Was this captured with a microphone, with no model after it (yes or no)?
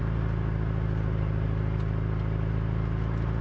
yes